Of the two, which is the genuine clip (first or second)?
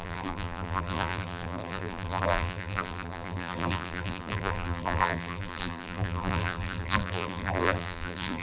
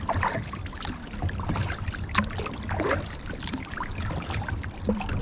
second